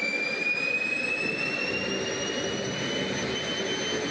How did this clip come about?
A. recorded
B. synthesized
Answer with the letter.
A